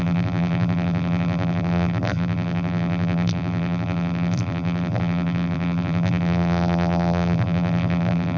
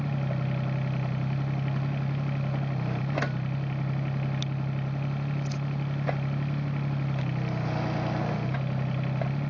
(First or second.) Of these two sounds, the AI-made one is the first